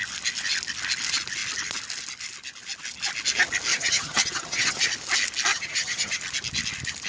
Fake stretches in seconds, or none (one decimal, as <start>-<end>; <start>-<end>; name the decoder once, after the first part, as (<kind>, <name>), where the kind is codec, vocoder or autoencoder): 3.7-4.8 (vocoder, HiFi-GAN); 5.5-6.2